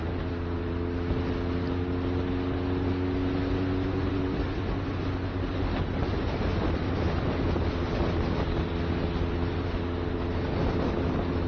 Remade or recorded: recorded